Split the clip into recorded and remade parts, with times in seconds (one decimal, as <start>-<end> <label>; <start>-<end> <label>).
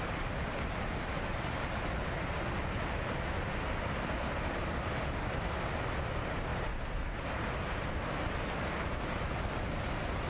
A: 0.0-6.5 recorded; 6.5-7.9 remade; 7.9-10.3 recorded